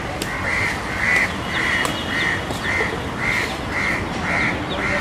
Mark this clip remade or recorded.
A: remade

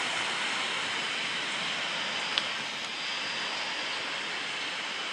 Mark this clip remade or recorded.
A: recorded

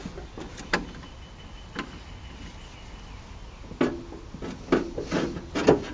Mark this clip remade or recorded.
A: recorded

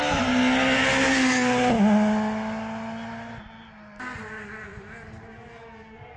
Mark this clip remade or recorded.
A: recorded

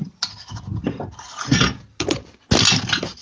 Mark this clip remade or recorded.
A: recorded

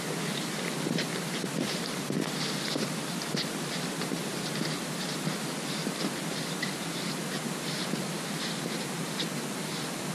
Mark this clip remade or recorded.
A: remade